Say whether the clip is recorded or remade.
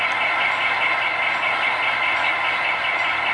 recorded